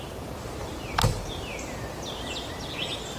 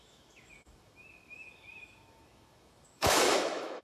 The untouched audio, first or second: first